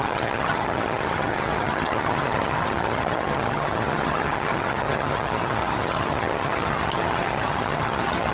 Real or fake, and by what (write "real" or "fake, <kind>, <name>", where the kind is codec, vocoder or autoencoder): fake, vocoder, HiFi-GAN